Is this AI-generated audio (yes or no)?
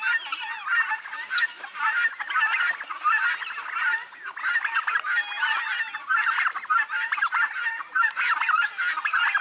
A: no